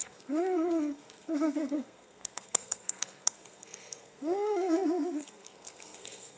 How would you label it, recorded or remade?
remade